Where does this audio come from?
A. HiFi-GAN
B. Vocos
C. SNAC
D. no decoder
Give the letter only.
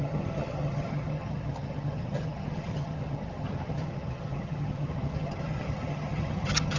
A